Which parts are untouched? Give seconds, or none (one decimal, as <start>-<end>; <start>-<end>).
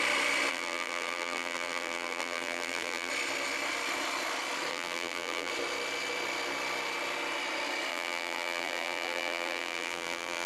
0.0-0.5; 3.1-4.7; 5.5-7.9